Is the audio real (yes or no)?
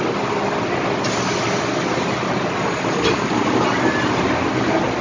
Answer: yes